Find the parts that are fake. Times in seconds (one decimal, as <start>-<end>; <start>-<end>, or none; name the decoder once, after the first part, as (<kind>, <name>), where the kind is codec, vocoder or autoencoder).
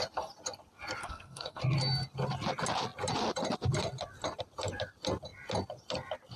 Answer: 1.0-1.6 (codec, SNAC)